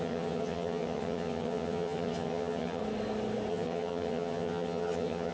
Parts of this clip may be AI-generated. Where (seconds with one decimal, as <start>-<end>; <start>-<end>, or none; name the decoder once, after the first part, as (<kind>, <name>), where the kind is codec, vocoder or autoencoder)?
0.0-2.8 (vocoder, HiFi-GAN); 3.5-5.3